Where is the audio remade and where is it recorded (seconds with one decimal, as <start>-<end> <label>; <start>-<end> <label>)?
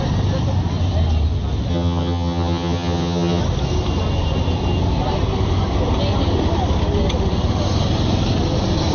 0.0-1.7 recorded; 1.7-3.4 remade; 3.4-8.9 recorded